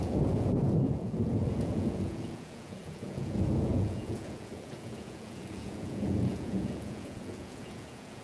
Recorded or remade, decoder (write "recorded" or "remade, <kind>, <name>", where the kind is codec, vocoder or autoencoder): remade, vocoder, Vocos